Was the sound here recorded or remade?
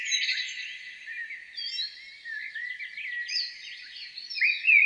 recorded